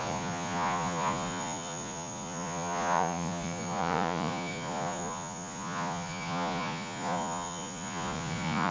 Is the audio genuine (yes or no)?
no